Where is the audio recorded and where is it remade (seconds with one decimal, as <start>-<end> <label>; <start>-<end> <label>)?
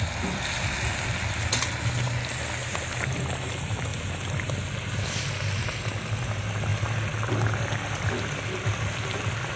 0.0-9.6 recorded